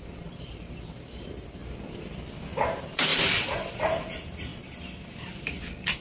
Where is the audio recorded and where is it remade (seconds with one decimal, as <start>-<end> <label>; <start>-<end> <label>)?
0.0-1.6 remade; 1.6-2.6 recorded; 2.6-4.5 remade; 4.5-5.2 recorded; 5.2-6.0 remade